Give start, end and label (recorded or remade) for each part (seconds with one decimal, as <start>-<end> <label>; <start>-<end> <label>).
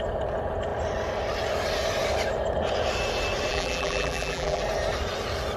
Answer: 0.0-3.5 recorded; 3.5-4.6 remade; 4.6-5.6 recorded